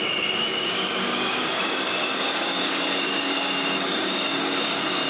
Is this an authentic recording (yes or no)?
no